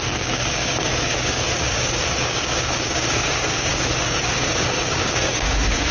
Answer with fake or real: fake